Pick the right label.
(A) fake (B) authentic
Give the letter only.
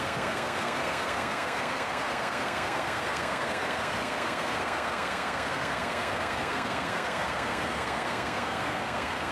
A